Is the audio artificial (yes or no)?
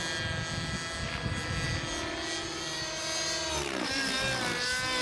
no